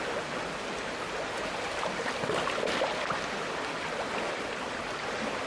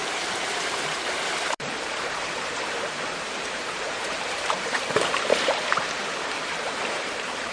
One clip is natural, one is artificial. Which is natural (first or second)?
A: first